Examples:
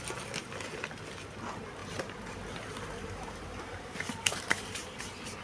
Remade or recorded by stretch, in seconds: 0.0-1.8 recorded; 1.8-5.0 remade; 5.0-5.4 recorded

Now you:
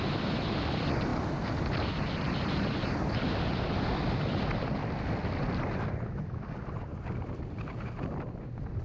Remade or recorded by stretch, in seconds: 0.0-6.9 recorded; 6.9-7.7 remade; 7.7-8.8 recorded

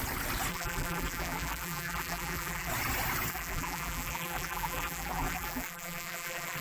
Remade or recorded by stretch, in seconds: 0.0-0.5 recorded; 0.5-2.7 remade; 2.7-3.3 recorded; 3.3-6.6 remade

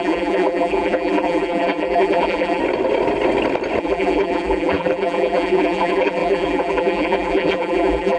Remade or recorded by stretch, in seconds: 0.0-2.6 remade; 2.6-3.8 recorded; 3.8-8.2 remade

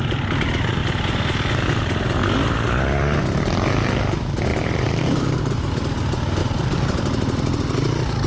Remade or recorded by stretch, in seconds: 0.0-4.5 recorded; 4.5-5.6 remade; 5.6-6.4 recorded; 6.4-7.0 remade; 7.0-8.3 recorded